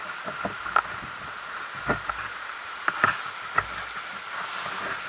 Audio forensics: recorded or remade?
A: recorded